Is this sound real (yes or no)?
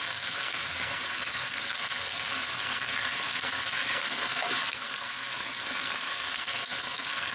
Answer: no